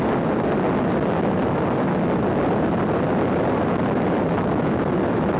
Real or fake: real